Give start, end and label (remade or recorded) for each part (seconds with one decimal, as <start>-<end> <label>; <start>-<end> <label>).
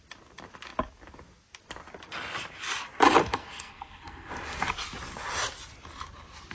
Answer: 0.0-3.2 recorded; 3.2-4.3 remade; 4.3-6.5 recorded